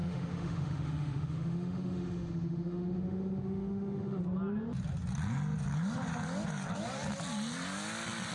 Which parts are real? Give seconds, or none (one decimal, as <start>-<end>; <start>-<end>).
4.2-8.3